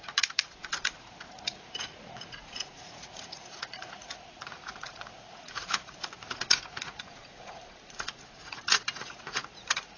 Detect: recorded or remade remade